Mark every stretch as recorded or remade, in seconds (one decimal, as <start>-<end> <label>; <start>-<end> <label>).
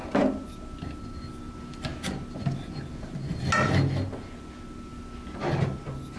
0.0-6.2 recorded